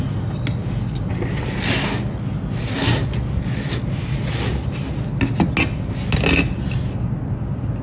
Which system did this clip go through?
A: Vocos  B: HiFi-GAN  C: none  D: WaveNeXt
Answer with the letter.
C